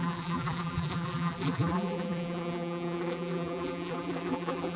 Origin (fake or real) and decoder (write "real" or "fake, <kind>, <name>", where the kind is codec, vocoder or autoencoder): fake, vocoder, BigVGAN v2